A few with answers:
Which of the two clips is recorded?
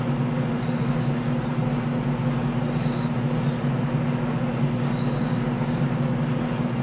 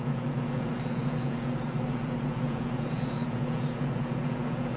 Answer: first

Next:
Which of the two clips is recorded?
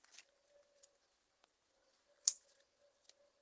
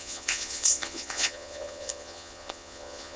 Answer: first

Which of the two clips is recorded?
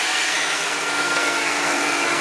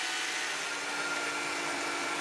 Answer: second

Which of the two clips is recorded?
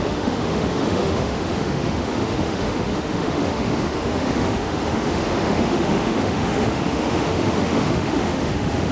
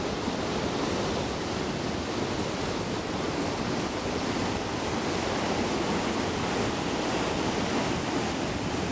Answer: second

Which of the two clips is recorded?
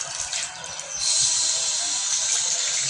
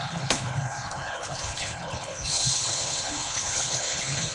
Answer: first